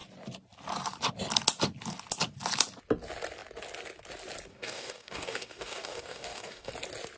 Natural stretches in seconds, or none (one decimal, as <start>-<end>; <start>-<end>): 0.0-4.5; 6.7-7.2